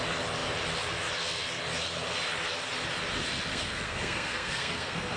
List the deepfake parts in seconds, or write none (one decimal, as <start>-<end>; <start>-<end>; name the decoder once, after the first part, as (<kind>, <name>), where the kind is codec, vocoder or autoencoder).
3.5-5.2 (codec, SNAC)